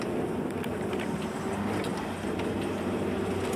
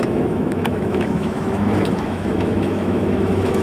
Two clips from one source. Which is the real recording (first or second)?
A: first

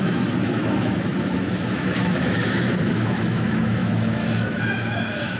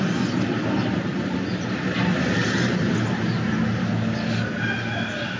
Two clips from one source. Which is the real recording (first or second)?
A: second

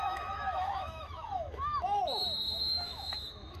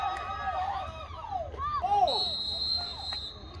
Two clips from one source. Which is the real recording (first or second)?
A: second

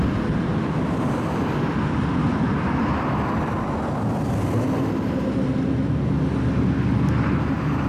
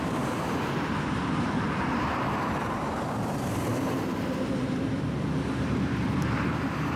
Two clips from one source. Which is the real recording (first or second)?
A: first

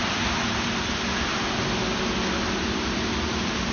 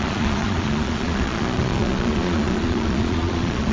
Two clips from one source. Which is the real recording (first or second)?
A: first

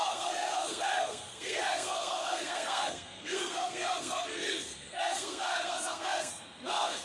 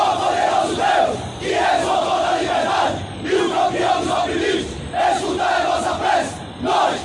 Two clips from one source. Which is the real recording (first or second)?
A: second